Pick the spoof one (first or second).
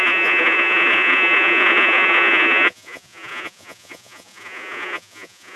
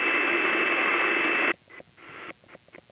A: first